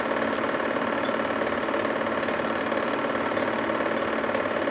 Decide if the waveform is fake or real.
real